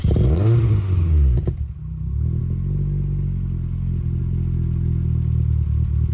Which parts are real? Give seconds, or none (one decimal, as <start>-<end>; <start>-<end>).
0.0-6.1